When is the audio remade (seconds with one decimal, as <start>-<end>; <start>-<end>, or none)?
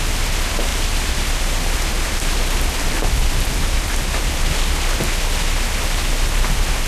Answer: 0.7-4.4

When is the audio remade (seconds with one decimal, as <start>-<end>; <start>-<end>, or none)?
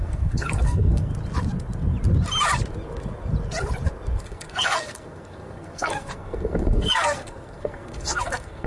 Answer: 0.0-1.1; 4.2-8.7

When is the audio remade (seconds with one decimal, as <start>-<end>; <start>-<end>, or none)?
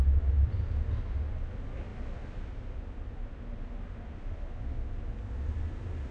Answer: none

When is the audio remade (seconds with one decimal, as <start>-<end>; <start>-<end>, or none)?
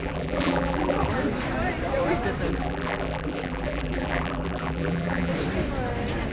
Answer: 0.0-1.1; 2.5-5.3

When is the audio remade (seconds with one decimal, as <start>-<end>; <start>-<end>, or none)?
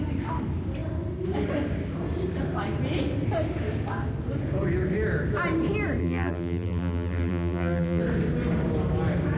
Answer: 6.0-8.0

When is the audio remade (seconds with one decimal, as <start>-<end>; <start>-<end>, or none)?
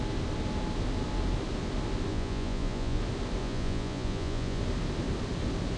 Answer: 2.1-3.0; 3.4-4.6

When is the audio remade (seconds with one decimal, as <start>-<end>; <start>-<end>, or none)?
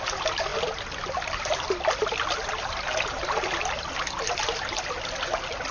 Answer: none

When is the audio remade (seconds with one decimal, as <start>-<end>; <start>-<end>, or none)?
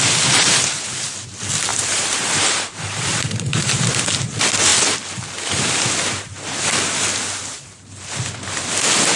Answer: 1.7-3.9